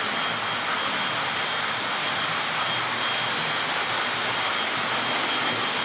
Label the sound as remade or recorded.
recorded